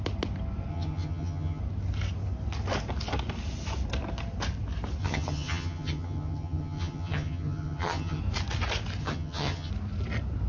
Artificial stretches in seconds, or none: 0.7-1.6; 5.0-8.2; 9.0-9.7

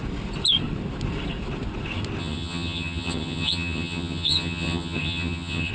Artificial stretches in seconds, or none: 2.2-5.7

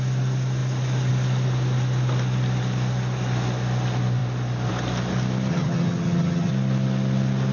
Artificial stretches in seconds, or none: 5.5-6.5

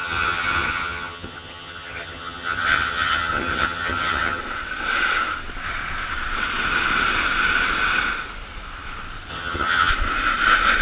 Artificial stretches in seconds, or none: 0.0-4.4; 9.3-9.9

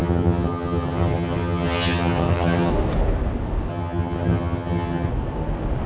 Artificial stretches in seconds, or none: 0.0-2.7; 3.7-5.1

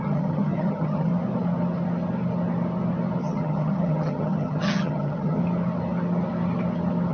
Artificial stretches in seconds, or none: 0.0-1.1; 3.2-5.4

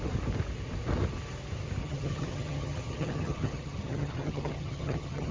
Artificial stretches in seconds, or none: 1.8-5.3